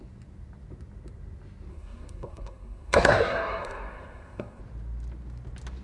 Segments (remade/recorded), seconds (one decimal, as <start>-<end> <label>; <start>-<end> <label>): 0.0-1.7 recorded; 1.7-4.6 remade; 4.6-5.8 recorded